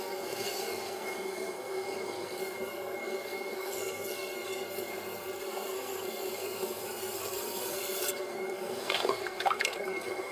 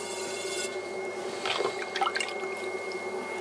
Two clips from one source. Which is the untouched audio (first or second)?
second